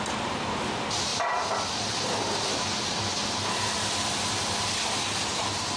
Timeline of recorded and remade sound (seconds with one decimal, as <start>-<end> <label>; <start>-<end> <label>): 0.0-5.8 recorded